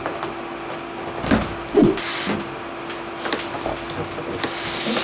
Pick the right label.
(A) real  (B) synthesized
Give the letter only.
A